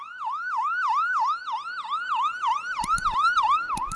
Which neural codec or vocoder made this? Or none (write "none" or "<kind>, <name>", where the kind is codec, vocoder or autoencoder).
none